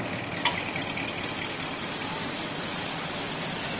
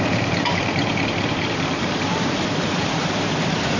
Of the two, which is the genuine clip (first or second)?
first